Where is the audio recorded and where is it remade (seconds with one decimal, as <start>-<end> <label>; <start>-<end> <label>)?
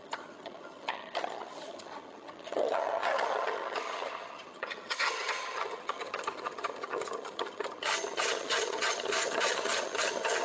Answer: 0.0-10.4 remade